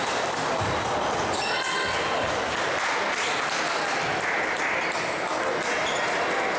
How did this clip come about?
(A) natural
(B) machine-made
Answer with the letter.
A